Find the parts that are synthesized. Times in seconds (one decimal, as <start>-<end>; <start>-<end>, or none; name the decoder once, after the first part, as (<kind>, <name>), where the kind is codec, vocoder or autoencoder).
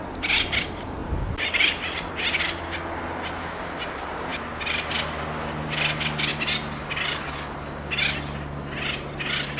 1.0-2.1 (vocoder, BigVGAN v2)